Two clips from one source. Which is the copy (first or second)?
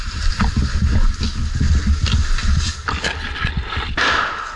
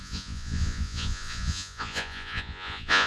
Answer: second